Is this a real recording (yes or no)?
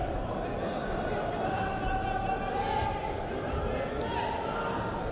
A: yes